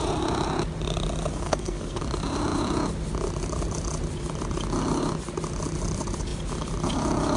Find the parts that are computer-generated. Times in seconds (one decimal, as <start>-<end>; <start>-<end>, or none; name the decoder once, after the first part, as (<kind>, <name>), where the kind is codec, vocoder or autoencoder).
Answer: 1.3-2.0 (codec, SNAC)